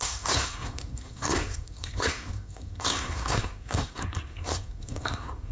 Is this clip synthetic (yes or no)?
yes